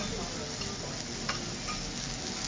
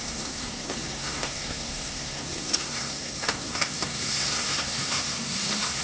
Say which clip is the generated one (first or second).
second